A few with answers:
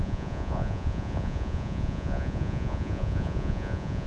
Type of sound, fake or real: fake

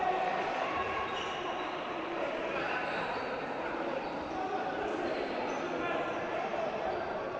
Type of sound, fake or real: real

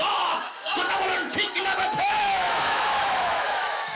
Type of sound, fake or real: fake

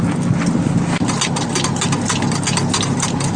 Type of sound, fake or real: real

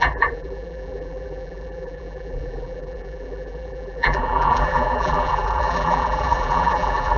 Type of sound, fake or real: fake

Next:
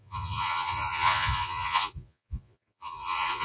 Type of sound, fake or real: fake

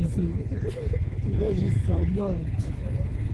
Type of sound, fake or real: fake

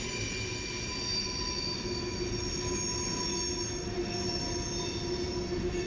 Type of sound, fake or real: real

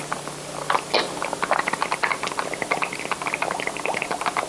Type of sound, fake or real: real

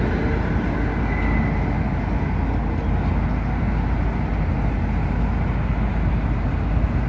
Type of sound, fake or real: real